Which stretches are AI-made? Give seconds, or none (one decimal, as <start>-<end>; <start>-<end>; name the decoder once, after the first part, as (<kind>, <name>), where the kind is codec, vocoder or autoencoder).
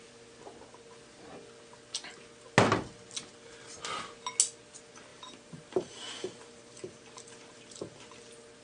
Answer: 5.1-8.2 (vocoder, BigVGAN v2)